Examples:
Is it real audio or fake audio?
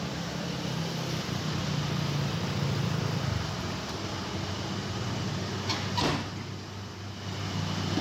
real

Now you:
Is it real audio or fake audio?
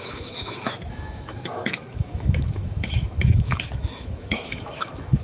fake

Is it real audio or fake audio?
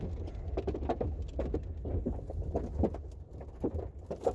real